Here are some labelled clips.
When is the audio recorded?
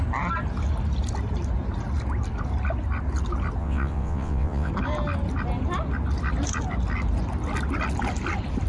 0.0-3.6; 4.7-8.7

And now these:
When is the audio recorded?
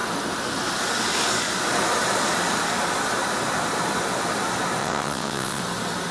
0.0-4.8; 5.6-6.1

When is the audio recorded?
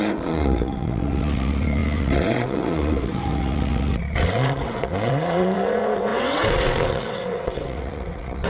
none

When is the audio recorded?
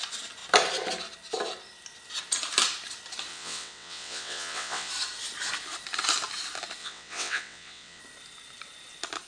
0.0-3.3; 4.9-6.8; 8.0-9.3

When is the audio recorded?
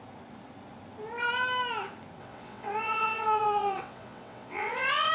0.0-2.2